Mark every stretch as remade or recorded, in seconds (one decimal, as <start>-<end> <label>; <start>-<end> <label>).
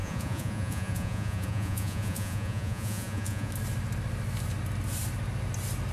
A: 0.0-3.5 remade; 3.5-5.9 recorded